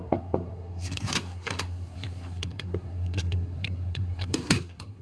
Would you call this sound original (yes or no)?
no